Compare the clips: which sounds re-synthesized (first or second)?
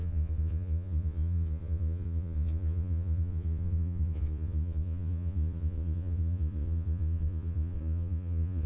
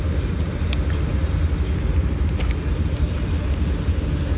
first